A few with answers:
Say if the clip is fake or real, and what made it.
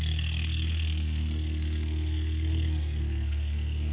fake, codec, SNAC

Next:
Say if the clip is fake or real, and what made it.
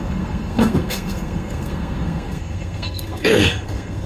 fake, codec, SNAC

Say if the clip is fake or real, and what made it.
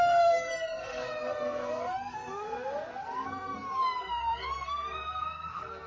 fake, codec, SNAC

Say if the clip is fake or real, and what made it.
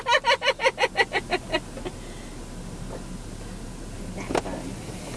real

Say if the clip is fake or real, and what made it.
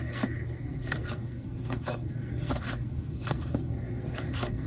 fake, codec, SNAC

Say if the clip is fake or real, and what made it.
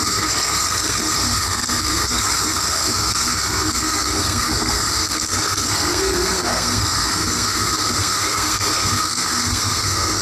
fake, codec, SNAC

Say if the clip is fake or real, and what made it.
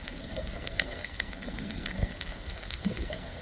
fake, codec, SNAC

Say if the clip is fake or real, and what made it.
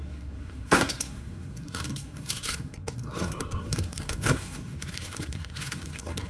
fake, codec, SNAC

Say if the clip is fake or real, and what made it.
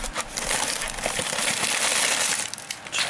real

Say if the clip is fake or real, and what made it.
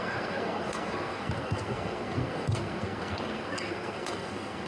fake, codec, SNAC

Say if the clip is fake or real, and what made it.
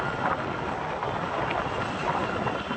real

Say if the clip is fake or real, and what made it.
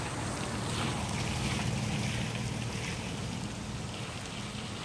real